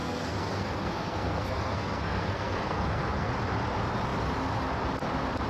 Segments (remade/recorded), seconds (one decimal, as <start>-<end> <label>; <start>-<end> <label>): 0.0-3.3 remade; 3.3-5.5 recorded

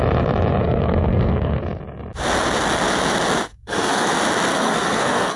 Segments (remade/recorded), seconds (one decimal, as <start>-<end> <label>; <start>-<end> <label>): 0.0-0.6 recorded; 0.6-1.6 remade; 1.6-3.5 recorded; 3.5-4.1 remade; 4.1-4.5 recorded; 4.5-5.4 remade

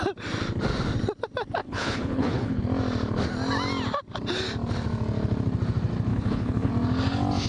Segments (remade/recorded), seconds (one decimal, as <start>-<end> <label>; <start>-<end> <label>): 0.0-1.6 recorded; 1.6-2.6 remade; 2.6-6.1 recorded; 6.1-6.7 remade; 6.7-7.5 recorded

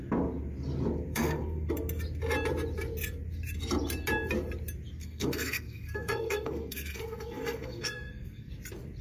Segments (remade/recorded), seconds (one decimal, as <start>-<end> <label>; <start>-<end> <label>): 0.0-1.1 recorded; 1.1-1.7 remade; 1.7-5.0 recorded; 5.0-8.5 remade; 8.5-9.0 recorded

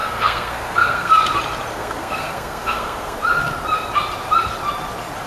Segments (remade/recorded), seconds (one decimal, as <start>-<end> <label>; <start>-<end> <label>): 0.0-1.1 remade; 1.1-1.7 recorded; 1.7-3.2 remade; 3.2-5.3 recorded